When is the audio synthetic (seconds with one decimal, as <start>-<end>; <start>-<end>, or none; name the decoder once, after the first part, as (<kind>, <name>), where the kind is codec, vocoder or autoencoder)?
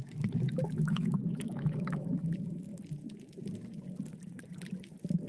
0.0-2.7 (autoencoder, DAC-VAE)